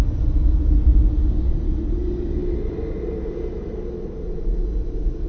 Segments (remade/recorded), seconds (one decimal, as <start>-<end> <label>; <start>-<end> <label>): 0.0-5.3 recorded